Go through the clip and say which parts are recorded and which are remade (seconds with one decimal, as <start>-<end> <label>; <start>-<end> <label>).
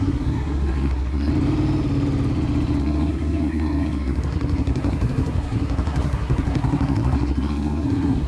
0.0-1.3 remade; 1.3-2.8 recorded; 2.8-8.3 remade